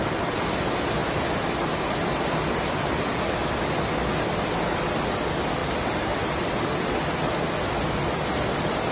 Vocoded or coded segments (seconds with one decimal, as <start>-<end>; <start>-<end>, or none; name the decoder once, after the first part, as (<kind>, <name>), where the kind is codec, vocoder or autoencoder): none